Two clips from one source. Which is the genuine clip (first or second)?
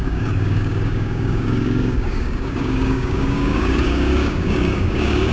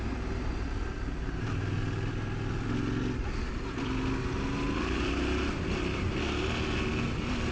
second